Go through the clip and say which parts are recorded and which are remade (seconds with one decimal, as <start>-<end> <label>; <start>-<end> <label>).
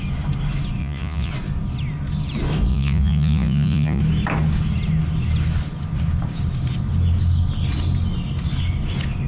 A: 0.0-0.8 recorded; 0.8-1.3 remade; 1.3-2.7 recorded; 2.7-4.0 remade; 4.0-9.3 recorded